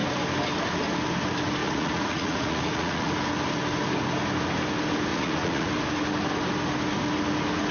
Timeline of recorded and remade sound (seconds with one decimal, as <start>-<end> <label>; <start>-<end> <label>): 0.0-1.6 recorded; 1.6-3.1 remade; 3.1-5.1 recorded; 5.1-5.7 remade; 5.7-7.7 recorded